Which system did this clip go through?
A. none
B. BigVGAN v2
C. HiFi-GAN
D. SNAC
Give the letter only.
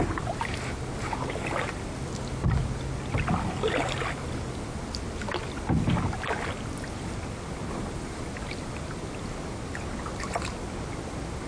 A